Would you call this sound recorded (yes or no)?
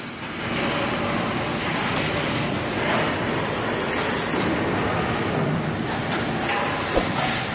yes